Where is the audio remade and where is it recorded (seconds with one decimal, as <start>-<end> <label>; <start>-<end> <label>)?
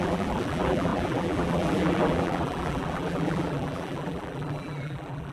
0.0-5.3 remade